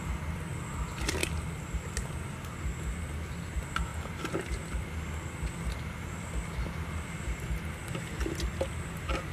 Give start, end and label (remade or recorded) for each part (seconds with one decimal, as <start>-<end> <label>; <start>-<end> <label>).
0.0-9.3 recorded